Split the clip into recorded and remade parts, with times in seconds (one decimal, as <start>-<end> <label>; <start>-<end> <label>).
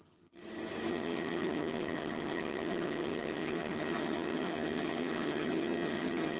0.0-0.4 remade; 0.4-0.9 recorded; 0.9-6.4 remade